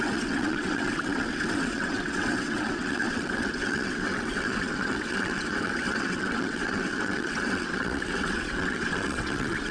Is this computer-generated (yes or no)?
yes